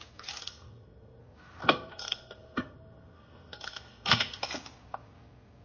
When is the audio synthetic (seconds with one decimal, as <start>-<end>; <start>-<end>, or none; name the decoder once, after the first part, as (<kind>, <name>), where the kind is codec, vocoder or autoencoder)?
0.4-1.2 (codec, SNAC); 1.6-4.4